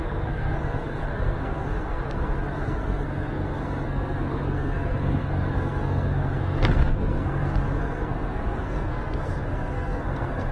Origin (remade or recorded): remade